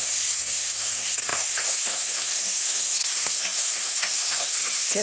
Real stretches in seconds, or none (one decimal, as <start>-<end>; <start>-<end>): none